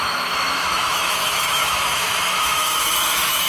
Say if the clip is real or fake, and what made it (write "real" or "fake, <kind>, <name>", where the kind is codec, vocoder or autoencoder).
fake, autoencoder, DAC-VAE